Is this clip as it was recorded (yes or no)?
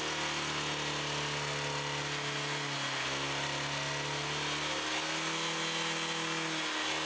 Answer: yes